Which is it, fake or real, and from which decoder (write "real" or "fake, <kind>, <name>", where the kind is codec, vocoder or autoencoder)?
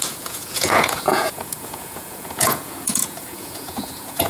fake, vocoder, Vocos